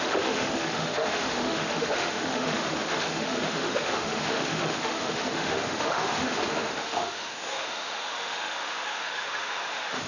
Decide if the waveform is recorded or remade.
remade